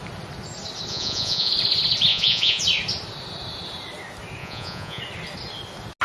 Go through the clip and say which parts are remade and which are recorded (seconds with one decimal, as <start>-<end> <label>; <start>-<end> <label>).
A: 0.0-0.9 recorded; 0.9-1.5 remade; 1.5-2.1 recorded; 2.1-2.6 remade; 2.6-4.4 recorded; 4.4-5.0 remade; 5.0-6.0 recorded